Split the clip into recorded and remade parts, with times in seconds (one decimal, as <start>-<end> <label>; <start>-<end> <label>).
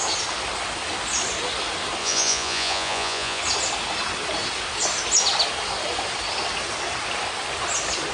0.0-2.0 recorded; 2.0-3.4 remade; 3.4-8.1 recorded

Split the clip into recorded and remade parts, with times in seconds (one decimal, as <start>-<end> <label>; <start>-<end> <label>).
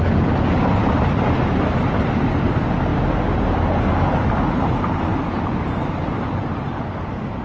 0.0-0.8 recorded; 0.8-2.3 remade; 2.3-5.1 recorded; 5.1-6.2 remade; 6.2-7.4 recorded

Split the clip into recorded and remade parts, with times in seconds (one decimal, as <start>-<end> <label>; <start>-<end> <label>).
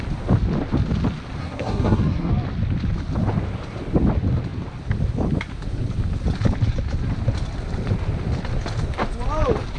0.0-1.4 recorded; 1.4-2.3 remade; 2.3-9.8 recorded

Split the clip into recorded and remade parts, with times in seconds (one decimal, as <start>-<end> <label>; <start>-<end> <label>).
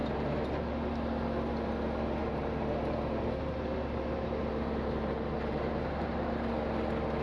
0.0-2.2 recorded; 2.2-6.5 remade; 6.5-7.2 recorded